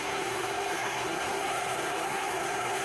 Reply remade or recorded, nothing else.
remade